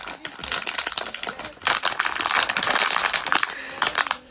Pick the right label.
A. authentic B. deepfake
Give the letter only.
B